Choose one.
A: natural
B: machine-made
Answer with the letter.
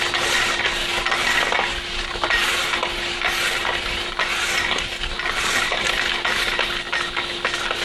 A